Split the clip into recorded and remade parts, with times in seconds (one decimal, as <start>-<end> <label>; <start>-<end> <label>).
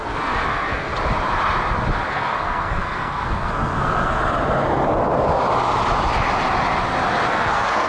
0.0-0.9 remade; 0.9-2.1 recorded; 2.1-4.2 remade; 4.2-7.3 recorded; 7.3-7.9 remade